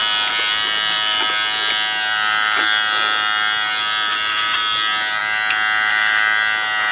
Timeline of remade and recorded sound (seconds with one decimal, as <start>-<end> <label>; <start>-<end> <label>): 0.0-6.9 recorded